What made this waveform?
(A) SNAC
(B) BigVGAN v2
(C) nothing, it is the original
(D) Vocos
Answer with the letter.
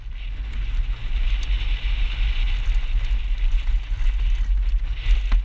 C